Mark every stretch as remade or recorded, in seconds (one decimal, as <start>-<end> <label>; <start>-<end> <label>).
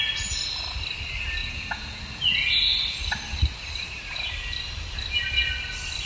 0.0-1.4 recorded; 1.4-2.0 remade; 2.0-6.1 recorded